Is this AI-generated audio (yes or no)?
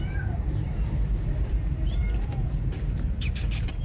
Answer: yes